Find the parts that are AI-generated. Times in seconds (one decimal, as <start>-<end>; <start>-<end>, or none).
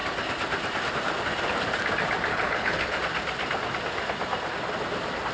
2.3-3.0